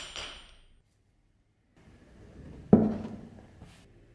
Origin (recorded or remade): recorded